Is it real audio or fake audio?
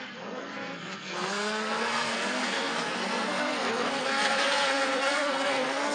fake